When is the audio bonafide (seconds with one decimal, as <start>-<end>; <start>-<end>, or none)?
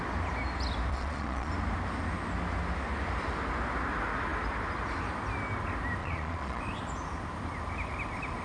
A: 0.0-0.9; 1.5-6.0; 6.6-8.4